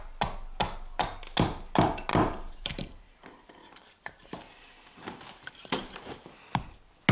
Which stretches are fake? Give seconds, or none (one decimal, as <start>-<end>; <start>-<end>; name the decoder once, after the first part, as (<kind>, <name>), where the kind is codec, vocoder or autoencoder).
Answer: 2.1-6.4 (vocoder, BigVGAN v2)